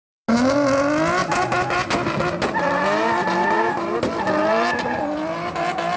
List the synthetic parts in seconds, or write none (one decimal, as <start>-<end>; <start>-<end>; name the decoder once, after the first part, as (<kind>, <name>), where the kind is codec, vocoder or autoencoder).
none